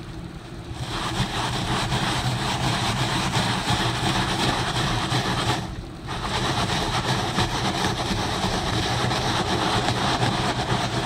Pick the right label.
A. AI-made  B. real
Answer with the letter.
A